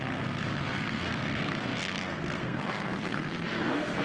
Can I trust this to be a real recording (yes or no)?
no